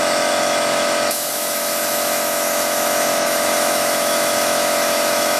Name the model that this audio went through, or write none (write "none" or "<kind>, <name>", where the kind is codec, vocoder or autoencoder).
autoencoder, DAC-VAE